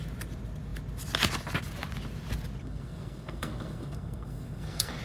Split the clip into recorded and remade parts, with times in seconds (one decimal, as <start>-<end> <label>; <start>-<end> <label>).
0.0-2.6 recorded; 2.6-5.0 remade